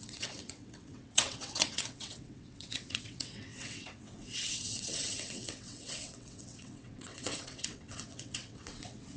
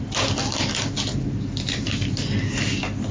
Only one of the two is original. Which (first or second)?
second